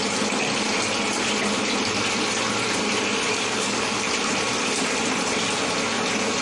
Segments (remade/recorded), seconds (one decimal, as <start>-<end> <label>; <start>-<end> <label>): 0.0-3.3 recorded; 3.3-3.9 remade; 3.9-6.4 recorded